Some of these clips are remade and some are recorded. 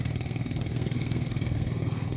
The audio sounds remade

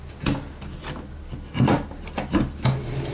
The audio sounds recorded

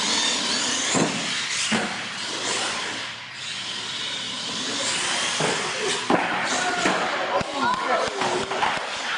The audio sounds recorded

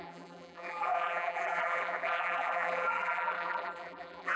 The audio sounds remade